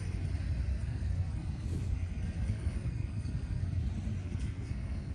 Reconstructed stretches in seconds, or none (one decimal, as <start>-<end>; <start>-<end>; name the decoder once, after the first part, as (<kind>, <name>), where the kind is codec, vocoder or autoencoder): 0.7-3.8 (codec, SNAC); 4.2-5.1

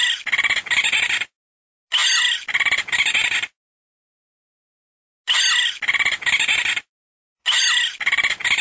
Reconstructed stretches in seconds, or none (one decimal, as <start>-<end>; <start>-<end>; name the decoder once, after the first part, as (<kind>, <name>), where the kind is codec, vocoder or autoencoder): none

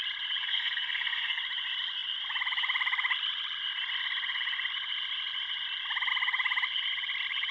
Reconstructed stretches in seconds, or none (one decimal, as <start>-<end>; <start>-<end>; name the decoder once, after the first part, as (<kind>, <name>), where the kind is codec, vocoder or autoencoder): 0.4-1.4 (codec, SNAC)

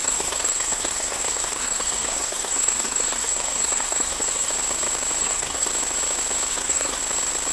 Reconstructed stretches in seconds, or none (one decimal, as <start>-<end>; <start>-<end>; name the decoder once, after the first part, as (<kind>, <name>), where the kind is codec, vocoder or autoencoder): 0.0-4.5 (codec, SNAC); 5.2-5.7; 6.5-7.0

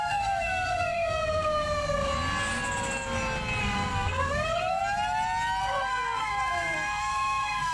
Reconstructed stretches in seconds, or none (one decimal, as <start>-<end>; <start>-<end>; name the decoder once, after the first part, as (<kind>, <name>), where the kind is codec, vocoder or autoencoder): 0.0-2.1 (codec, SNAC); 3.6-4.8; 5.6-7.7